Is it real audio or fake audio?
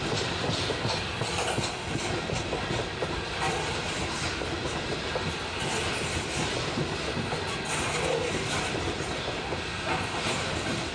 real